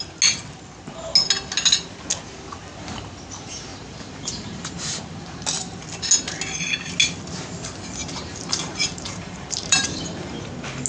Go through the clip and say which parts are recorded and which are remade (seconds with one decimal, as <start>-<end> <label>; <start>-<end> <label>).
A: 0.0-3.7 recorded; 3.7-5.3 remade; 5.3-8.0 recorded; 8.0-10.4 remade; 10.4-10.9 recorded